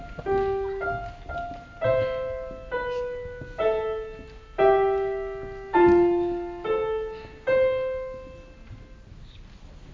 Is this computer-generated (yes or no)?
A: no